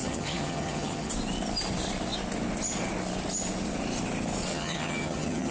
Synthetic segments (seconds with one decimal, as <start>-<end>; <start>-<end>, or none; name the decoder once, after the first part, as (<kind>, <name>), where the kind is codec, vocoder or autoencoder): 0.0-1.1 (vocoder, HiFi-GAN); 4.5-5.5